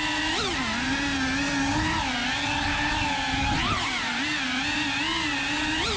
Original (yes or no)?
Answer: yes